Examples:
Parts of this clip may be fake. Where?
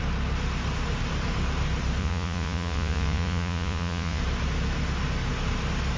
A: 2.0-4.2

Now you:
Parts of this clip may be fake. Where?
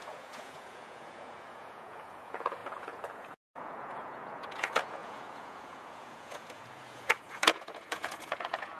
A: 0.0-8.8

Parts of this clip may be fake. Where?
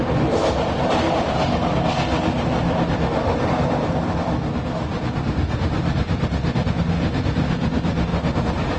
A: none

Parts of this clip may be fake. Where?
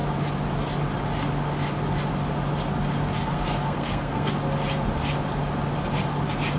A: 3.2-4.3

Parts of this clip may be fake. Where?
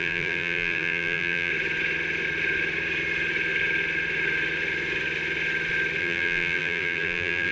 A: 0.0-1.5; 6.0-7.5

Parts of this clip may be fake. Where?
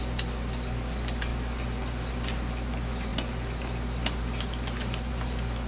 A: none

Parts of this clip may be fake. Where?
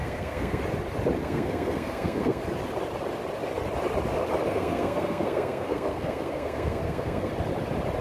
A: 0.0-0.6; 1.2-2.4; 4.5-7.3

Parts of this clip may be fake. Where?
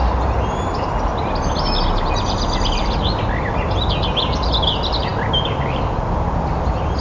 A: none